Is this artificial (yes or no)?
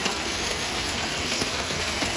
yes